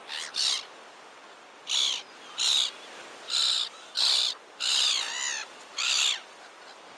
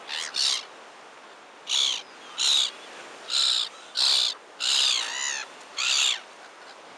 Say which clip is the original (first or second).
second